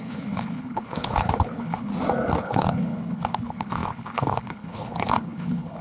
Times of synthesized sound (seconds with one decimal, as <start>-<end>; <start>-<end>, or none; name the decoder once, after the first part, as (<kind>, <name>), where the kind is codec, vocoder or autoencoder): 0.0-1.9 (codec, HILCodec); 2.4-5.8